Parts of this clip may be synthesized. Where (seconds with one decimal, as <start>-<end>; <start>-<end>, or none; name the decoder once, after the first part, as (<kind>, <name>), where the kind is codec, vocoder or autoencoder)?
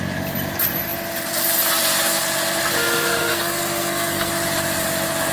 2.7-4.3 (codec, SNAC)